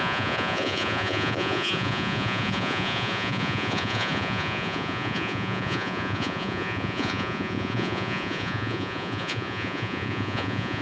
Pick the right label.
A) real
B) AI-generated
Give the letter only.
B